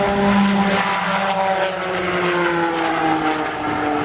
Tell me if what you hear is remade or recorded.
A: recorded